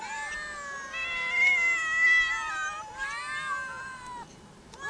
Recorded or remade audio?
recorded